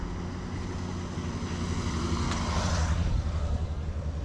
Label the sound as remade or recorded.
recorded